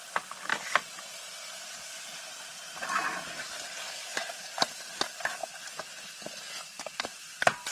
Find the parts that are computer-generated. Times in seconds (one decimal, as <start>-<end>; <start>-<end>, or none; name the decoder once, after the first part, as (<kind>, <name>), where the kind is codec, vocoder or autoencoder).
0.0-0.5 (vocoder, BigVGAN v2); 2.4-4.1; 5.0-5.4; 6.6-7.7